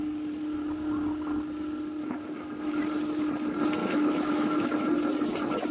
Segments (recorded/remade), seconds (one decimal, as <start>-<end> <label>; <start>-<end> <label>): 0.0-2.0 recorded; 2.0-2.8 remade; 2.8-3.8 recorded; 3.8-4.9 remade; 4.9-5.7 recorded